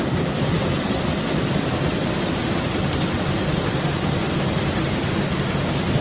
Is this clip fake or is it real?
real